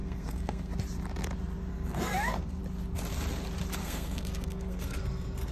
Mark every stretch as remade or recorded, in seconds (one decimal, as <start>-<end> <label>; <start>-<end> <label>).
0.0-0.7 remade; 0.7-1.7 recorded; 1.7-2.6 remade; 2.6-3.8 recorded; 3.8-5.5 remade